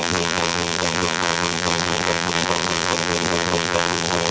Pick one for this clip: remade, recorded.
remade